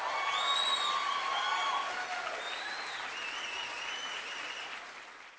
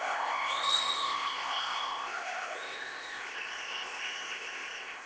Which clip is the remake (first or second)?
second